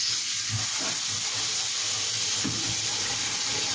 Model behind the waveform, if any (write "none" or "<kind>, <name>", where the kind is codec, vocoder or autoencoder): none